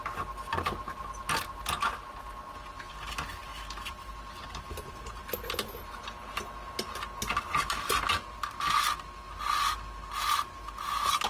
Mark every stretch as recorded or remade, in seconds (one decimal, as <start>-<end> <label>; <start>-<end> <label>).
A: 0.0-11.3 recorded